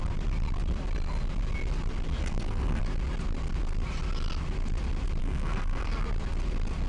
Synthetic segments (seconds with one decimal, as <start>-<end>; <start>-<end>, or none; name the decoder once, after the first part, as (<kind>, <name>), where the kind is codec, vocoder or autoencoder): 2.2-2.8 (codec, SNAC); 5.2-5.9